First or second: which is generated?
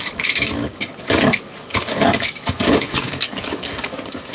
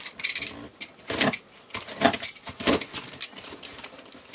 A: first